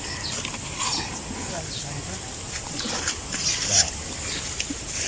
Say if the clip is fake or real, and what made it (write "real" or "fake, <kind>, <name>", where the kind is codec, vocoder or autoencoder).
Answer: real